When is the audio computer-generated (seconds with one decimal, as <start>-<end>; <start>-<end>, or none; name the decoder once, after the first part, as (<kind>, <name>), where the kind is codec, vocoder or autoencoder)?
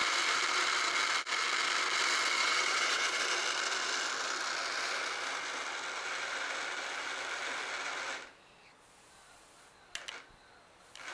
2.4-3.2 (vocoder, WaveNeXt)